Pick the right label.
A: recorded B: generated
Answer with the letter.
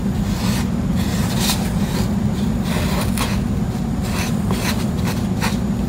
A